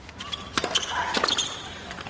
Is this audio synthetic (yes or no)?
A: no